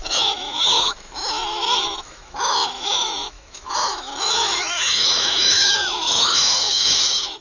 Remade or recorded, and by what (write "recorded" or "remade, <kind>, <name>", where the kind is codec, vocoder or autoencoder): remade, autoencoder, DAC-VAE